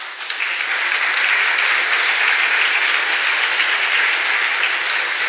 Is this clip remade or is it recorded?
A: recorded